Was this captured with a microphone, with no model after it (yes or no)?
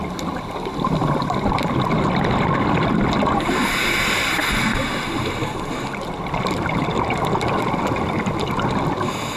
yes